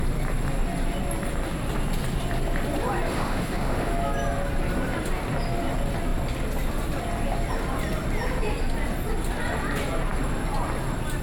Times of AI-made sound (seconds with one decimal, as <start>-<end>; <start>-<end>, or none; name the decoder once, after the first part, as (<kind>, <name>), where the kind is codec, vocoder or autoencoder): 3.1-3.9 (autoencoder, DAC-VAE)